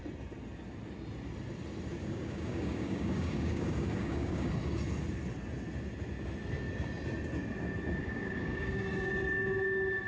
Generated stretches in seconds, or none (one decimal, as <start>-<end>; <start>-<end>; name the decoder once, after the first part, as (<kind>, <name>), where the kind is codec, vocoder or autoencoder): 2.0-4.5 (codec, DAC); 8.0-9.1